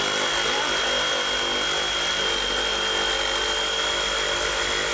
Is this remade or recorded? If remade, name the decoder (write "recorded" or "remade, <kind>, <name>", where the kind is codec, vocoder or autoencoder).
recorded